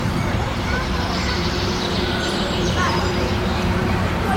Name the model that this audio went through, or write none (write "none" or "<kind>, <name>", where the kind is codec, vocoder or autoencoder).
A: vocoder, BigVGAN v2